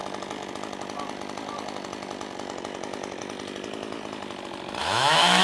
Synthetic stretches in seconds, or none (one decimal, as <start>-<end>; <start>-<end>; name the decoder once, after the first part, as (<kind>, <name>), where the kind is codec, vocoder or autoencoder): 4.8-5.4 (autoencoder, DAC-VAE)